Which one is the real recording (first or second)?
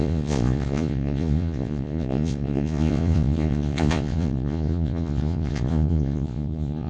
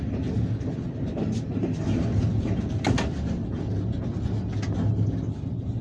second